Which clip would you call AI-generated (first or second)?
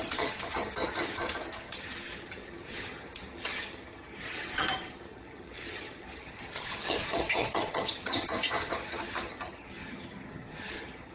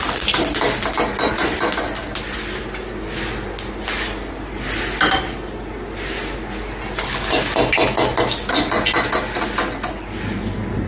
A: first